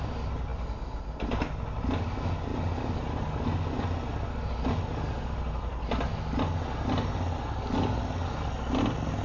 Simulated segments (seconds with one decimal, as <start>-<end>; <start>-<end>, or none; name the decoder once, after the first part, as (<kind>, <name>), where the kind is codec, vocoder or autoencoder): none